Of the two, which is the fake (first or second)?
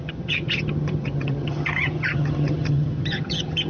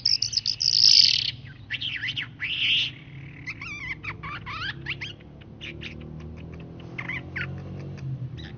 first